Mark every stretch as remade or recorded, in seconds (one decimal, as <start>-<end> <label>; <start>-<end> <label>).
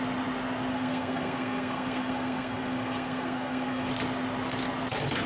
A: 0.0-0.7 recorded; 0.7-3.9 remade; 3.9-5.3 recorded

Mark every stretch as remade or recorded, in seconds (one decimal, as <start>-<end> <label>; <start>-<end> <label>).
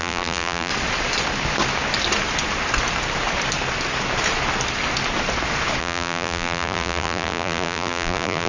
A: 0.0-0.7 remade; 0.7-5.8 recorded; 5.8-8.5 remade